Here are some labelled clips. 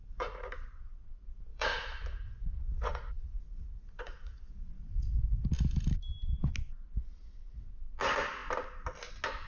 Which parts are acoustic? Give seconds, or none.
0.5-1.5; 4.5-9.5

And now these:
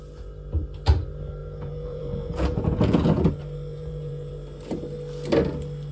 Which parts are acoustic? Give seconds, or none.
0.0-1.4; 3.3-3.7; 4.3-5.9